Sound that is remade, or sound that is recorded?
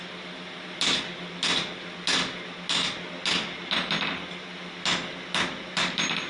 recorded